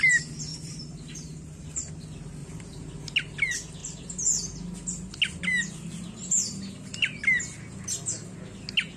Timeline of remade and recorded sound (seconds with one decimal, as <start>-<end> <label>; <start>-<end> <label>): 0.0-0.5 recorded; 0.5-1.9 remade; 1.9-2.4 recorded; 2.4-2.9 remade; 2.9-9.0 recorded